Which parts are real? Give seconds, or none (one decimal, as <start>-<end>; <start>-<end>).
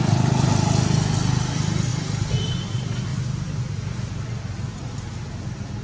0.0-5.8